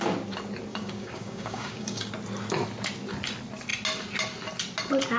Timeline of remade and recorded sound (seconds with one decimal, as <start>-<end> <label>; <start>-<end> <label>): 0.0-0.7 recorded; 0.7-2.1 remade; 2.1-5.2 recorded